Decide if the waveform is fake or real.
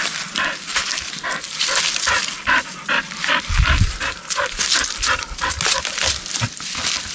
real